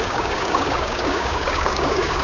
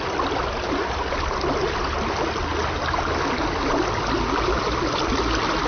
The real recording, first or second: second